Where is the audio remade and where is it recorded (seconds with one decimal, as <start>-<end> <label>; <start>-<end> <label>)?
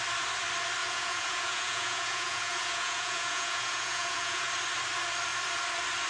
0.0-0.8 recorded; 0.8-4.5 remade; 4.5-6.1 recorded